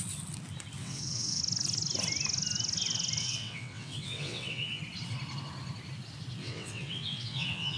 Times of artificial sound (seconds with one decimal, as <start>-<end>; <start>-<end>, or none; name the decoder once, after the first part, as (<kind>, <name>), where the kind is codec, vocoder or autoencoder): 0.8-1.4 (vocoder, WaveNeXt); 3.2-4.8; 6.4-7.8